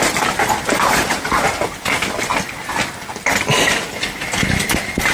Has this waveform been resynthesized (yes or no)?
no